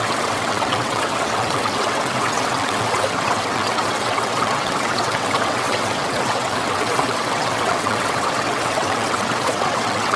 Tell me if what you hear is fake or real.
fake